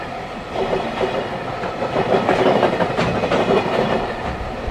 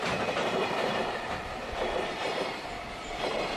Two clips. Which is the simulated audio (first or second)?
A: second